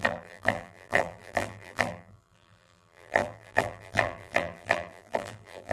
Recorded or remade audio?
remade